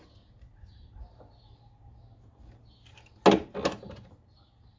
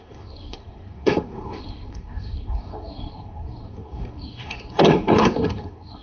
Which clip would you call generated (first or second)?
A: second